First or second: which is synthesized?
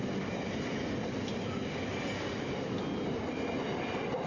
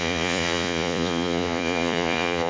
second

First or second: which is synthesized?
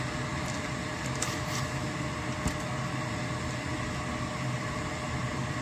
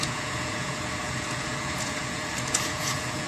second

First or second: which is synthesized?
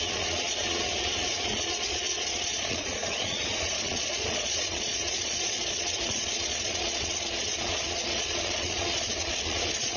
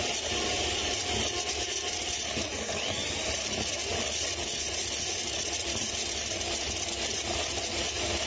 first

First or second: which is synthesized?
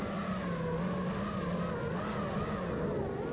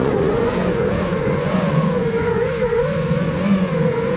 second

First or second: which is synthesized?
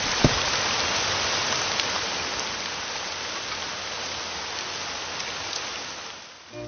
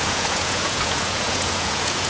second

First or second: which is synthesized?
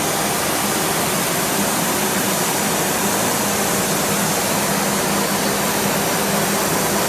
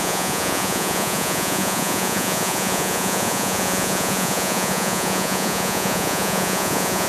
second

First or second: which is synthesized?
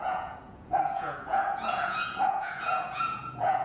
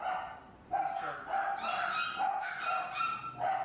first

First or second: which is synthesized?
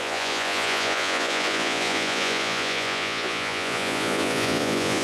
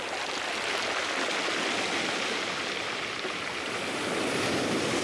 first